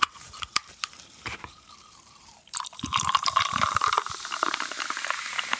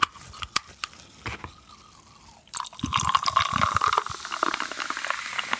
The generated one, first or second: first